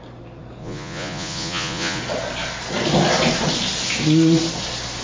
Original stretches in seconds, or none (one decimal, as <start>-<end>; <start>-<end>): 0.0-0.6; 2.0-5.0